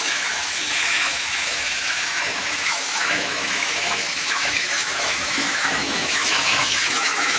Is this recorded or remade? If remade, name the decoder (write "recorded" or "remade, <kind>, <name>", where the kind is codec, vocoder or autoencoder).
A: remade, autoencoder, DAC-VAE